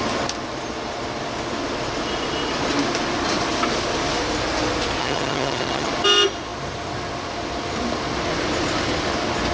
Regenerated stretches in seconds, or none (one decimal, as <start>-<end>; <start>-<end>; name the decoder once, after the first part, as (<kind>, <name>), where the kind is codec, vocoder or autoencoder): 5.0-5.9 (vocoder, HiFi-GAN)